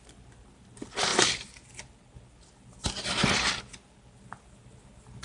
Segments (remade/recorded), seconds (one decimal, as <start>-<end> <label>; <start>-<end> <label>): 0.0-5.2 recorded